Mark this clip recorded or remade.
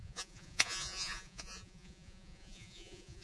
remade